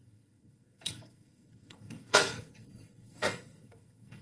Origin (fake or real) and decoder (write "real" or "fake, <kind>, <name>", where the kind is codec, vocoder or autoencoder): fake, codec, SNAC